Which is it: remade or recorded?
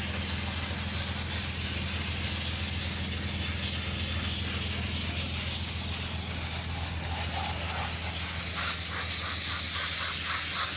recorded